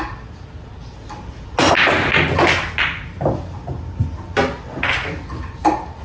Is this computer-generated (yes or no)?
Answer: no